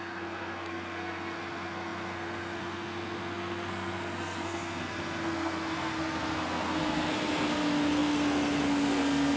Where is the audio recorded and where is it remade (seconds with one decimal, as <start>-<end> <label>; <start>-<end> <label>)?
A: 0.0-9.4 remade